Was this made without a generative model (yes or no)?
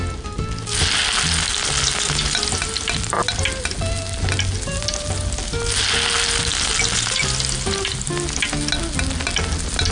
yes